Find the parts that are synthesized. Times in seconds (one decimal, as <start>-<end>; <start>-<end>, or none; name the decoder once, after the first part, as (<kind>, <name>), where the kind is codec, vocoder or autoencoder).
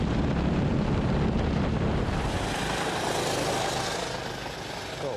none